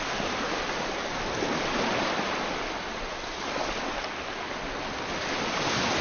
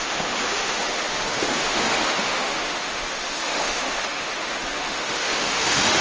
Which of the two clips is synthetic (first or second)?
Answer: second